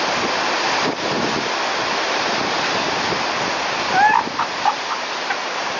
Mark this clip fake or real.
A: real